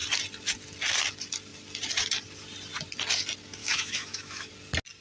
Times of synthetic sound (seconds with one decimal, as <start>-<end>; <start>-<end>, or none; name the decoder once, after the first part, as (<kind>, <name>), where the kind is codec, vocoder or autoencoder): 3.6-4.5 (autoencoder, DAC-VAE)